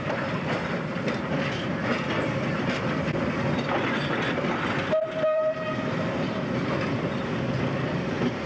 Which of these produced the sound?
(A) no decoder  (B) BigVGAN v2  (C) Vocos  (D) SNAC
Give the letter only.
B